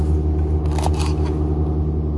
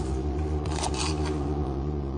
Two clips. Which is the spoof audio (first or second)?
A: second